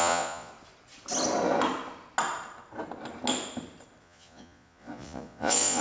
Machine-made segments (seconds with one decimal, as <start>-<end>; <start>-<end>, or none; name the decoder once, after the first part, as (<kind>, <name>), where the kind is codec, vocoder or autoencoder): 0.0-0.5 (vocoder, Vocos); 4.0-5.8